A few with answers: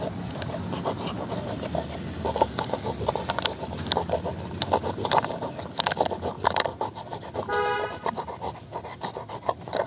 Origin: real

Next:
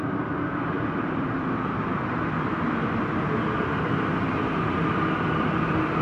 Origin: real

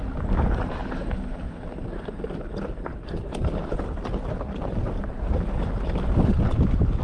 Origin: real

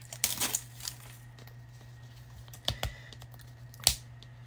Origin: real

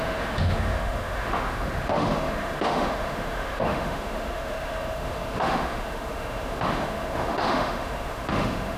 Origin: fake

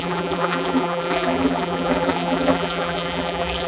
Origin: fake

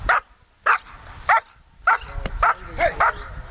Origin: real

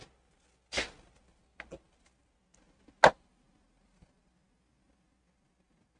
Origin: real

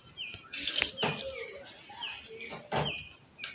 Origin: real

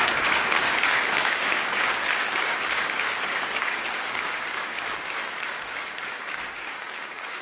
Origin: fake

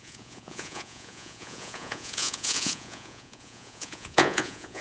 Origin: fake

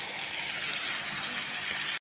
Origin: real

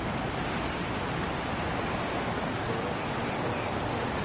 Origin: real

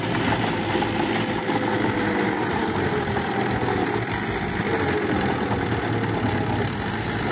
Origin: real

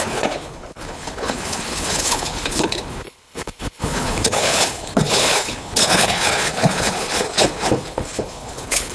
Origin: fake